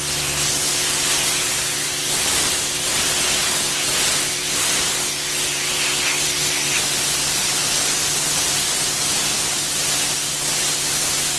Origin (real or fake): real